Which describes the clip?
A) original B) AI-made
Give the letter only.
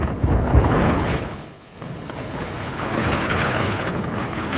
B